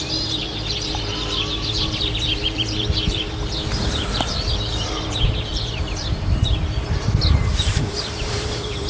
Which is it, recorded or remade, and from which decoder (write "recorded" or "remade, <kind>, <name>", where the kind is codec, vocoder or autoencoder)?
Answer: remade, vocoder, BigVGAN v2